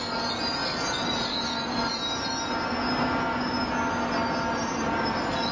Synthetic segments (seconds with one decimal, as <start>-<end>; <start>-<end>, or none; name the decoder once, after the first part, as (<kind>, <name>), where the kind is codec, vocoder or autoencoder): none